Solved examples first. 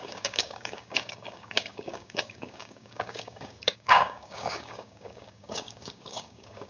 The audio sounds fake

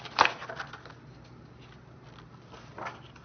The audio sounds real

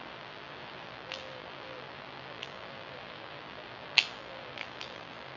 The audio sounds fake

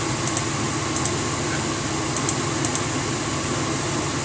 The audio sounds real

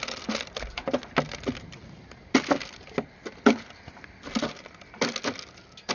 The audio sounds real